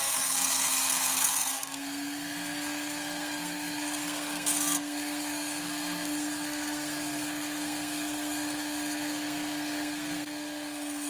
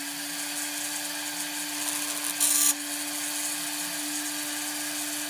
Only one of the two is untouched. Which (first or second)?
second